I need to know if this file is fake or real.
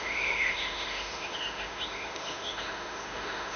fake